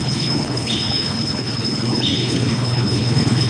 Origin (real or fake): fake